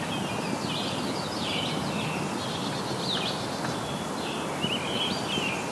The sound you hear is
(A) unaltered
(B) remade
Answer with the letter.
A